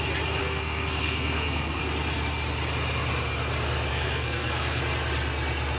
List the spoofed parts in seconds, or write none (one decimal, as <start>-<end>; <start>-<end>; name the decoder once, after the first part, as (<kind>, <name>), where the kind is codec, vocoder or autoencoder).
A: 0.4-1.8 (codec, SNAC); 3.9-4.8